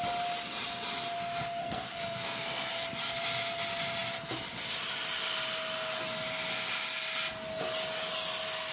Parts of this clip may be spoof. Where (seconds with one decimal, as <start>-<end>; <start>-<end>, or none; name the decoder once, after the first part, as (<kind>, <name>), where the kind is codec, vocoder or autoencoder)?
1.6-2.7 (codec, SNAC)